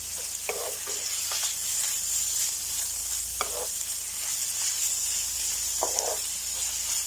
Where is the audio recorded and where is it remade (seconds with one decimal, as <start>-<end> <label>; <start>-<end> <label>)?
0.0-7.1 recorded